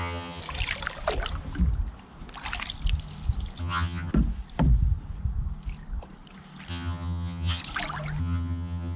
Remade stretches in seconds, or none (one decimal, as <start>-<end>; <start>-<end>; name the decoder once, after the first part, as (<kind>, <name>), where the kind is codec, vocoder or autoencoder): 0.0-0.4 (vocoder, HiFi-GAN); 3.6-4.1; 6.7-7.6; 8.2-9.0